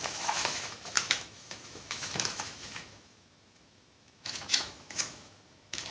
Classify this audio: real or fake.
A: fake